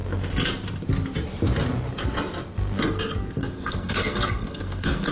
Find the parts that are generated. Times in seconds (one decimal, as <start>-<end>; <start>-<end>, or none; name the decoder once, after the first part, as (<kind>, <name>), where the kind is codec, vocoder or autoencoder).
3.4-5.1 (codec, SNAC)